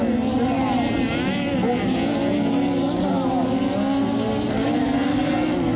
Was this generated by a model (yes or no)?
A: no